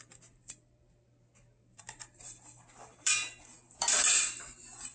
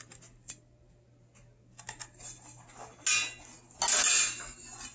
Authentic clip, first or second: second